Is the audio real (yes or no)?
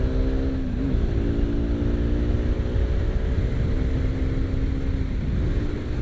yes